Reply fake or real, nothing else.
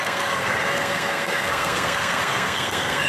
fake